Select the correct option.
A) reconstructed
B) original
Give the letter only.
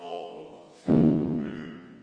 A